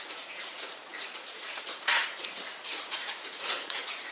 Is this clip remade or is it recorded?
remade